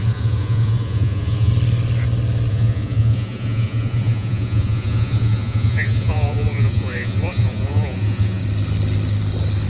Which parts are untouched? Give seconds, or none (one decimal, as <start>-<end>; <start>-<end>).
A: 1.5-2.5; 8.4-9.7